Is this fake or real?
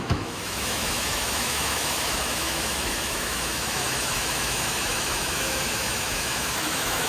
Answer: fake